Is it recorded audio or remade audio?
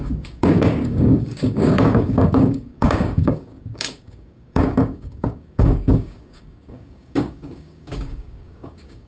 remade